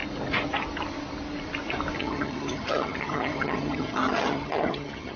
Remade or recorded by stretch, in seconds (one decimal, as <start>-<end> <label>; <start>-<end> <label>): 0.0-2.0 recorded; 2.0-5.2 remade